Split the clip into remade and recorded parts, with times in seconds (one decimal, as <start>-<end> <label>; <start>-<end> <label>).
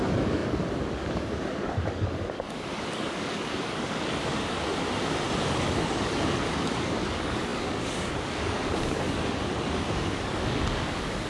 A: 0.0-4.7 remade; 4.7-5.4 recorded; 5.4-11.3 remade